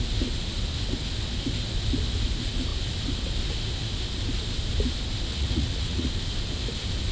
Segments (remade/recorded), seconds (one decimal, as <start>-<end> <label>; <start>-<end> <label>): 0.0-5.3 recorded; 5.3-6.1 remade; 6.1-7.1 recorded